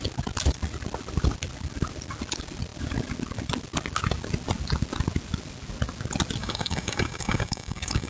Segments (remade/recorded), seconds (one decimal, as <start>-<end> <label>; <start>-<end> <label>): 0.0-6.4 recorded; 6.4-8.1 remade